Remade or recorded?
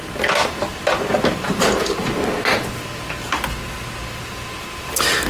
recorded